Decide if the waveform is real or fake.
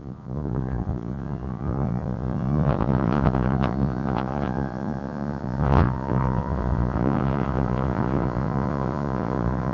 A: fake